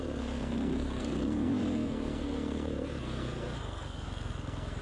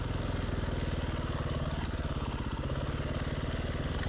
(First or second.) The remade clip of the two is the first